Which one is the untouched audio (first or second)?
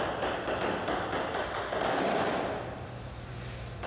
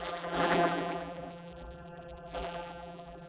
first